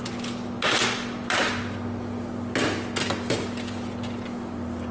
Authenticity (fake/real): real